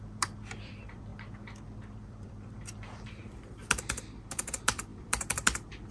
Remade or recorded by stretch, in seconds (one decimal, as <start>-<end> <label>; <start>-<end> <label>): 0.0-1.1 remade; 1.1-1.9 recorded; 1.9-3.6 remade; 3.6-4.4 recorded; 4.4-5.9 remade

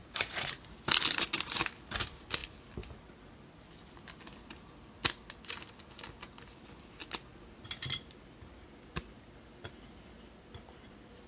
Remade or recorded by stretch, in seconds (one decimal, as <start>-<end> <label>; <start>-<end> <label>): 0.0-0.5 remade; 0.5-11.3 recorded

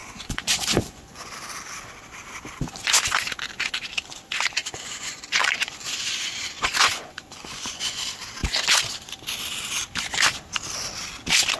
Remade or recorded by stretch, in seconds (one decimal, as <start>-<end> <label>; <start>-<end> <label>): 0.0-1.3 remade; 1.3-4.6 recorded; 4.6-8.0 remade; 8.0-11.6 recorded

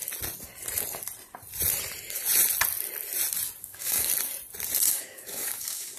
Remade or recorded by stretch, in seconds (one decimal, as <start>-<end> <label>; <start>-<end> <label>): 0.0-3.6 recorded; 3.6-4.1 remade; 4.1-4.9 recorded; 4.9-6.0 remade

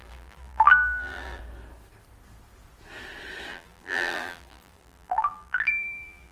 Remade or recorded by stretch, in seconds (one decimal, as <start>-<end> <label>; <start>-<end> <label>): 0.0-1.4 remade; 1.4-3.5 recorded; 3.5-6.3 remade

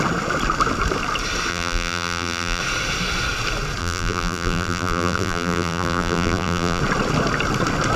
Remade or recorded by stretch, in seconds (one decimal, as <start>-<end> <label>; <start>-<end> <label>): 0.0-1.5 recorded; 1.5-2.6 remade; 2.6-3.8 recorded; 3.8-6.8 remade; 6.8-8.0 recorded

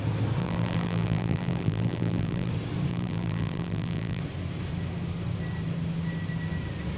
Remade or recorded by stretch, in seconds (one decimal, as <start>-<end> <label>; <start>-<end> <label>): 0.0-0.4 recorded; 0.4-2.5 remade; 2.5-2.9 recorded; 2.9-4.2 remade; 4.2-7.0 recorded